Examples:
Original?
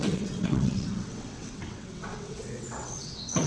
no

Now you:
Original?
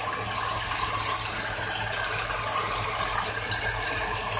yes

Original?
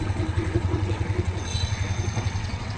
no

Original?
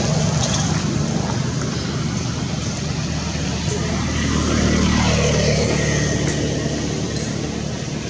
yes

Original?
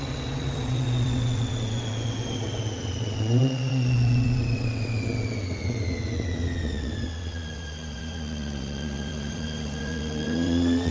no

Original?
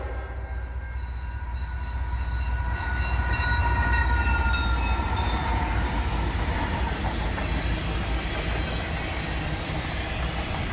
yes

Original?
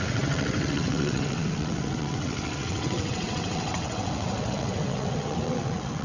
no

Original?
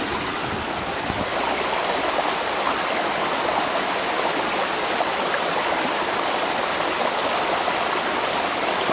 yes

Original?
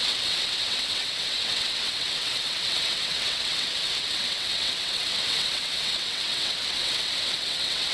no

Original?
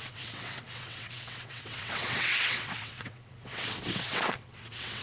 no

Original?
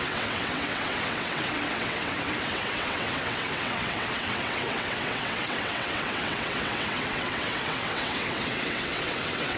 no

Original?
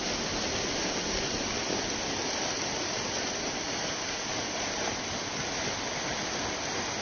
yes